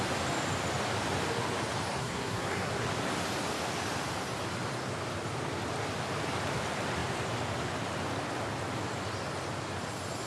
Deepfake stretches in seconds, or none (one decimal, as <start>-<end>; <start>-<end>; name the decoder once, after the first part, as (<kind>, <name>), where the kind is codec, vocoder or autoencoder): 2.0-2.7 (codec, SNAC)